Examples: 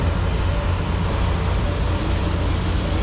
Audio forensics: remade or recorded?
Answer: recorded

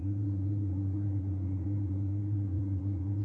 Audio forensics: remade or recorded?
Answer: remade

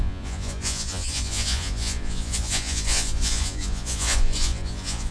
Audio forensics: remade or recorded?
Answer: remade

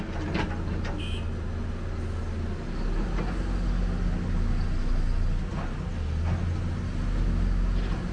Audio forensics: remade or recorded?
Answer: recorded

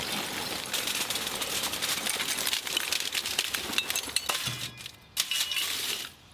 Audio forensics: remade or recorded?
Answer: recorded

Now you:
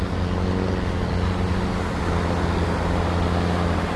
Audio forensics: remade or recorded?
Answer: recorded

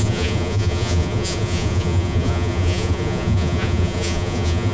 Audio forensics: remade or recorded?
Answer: remade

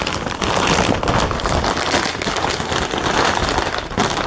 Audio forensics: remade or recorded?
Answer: recorded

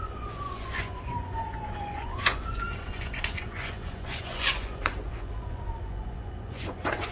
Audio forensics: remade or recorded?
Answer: remade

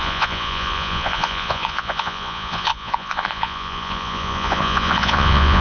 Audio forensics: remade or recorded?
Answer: remade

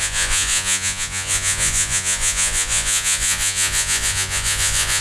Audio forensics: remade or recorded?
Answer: remade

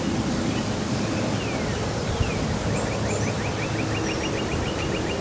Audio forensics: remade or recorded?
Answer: recorded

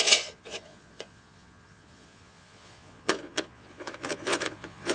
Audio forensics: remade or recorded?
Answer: remade